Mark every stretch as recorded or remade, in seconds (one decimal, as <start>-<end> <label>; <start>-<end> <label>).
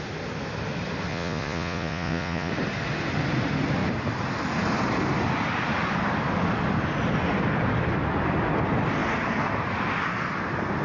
0.0-1.1 recorded; 1.1-2.5 remade; 2.5-10.8 recorded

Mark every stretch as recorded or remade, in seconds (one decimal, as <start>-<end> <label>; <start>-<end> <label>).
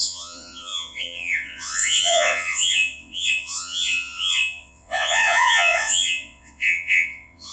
0.0-7.5 remade